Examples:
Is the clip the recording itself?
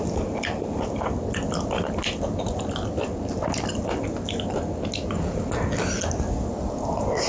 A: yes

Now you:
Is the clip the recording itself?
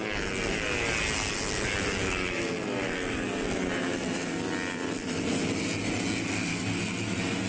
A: yes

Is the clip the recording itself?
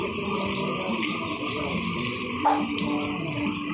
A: yes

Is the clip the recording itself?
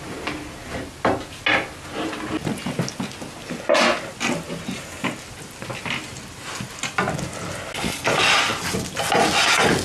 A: yes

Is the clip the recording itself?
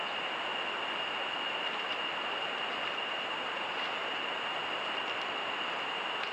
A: yes